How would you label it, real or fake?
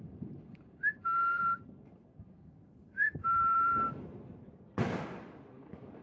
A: fake